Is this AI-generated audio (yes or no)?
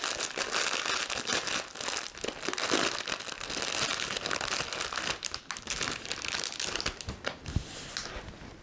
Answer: no